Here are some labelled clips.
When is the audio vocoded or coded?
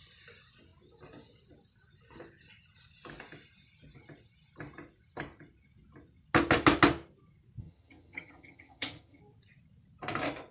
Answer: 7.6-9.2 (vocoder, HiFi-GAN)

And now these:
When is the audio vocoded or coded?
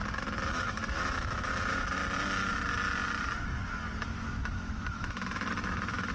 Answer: 0.5-2.0 (autoencoder, DAC-VAE); 4.1-6.1